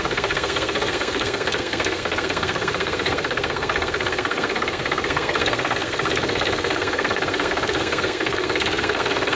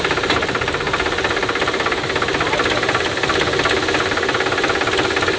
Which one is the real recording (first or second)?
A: second